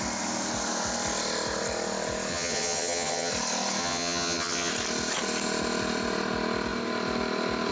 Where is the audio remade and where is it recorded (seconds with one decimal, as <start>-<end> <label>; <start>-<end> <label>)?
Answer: 0.0-2.3 recorded; 2.3-3.3 remade; 3.3-3.8 recorded; 3.8-4.7 remade; 4.7-7.7 recorded